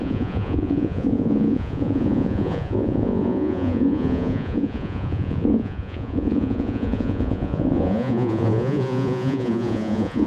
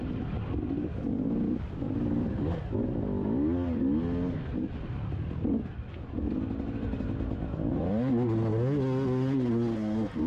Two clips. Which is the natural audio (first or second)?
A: second